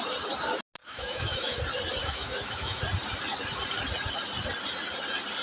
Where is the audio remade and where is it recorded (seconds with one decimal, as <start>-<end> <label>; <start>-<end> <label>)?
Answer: 0.0-0.8 recorded; 0.8-1.6 remade; 1.6-2.0 recorded; 2.0-2.8 remade; 2.8-5.4 recorded